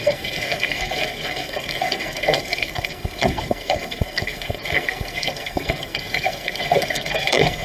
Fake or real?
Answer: fake